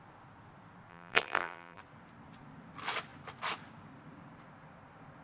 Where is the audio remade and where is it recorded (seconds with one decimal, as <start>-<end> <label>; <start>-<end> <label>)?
0.0-0.9 recorded; 0.9-1.8 remade; 1.8-5.2 recorded